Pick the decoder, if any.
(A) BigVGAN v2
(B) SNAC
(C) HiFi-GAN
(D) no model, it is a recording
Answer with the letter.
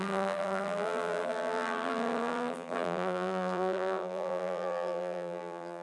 A